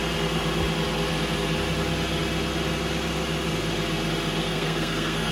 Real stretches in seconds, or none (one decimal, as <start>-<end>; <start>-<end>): 0.0-4.4